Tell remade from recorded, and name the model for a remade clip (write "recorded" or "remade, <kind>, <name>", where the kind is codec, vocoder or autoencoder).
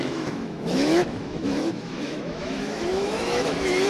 remade, autoencoder, DAC-VAE